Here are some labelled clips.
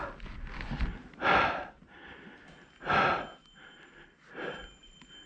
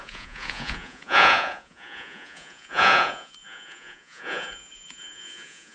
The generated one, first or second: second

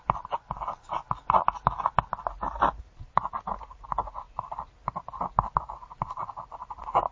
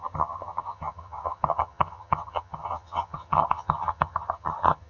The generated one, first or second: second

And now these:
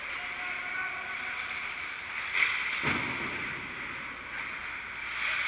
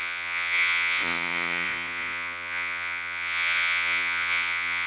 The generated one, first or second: second